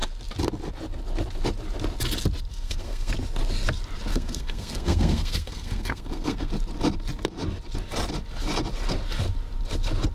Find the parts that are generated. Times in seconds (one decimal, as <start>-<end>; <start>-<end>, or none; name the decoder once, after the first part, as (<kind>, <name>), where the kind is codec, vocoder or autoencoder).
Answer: 2.5-3.1 (codec, SNAC); 4.1-6.5